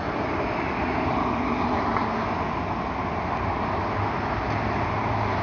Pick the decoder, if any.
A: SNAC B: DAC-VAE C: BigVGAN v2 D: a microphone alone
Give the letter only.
D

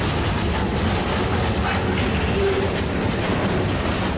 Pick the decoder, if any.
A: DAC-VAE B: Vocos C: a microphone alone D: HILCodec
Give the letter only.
C